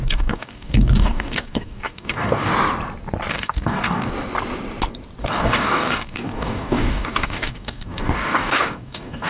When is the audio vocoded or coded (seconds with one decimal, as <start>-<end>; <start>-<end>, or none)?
0.0-2.5; 3.3-4.1; 5.2-9.3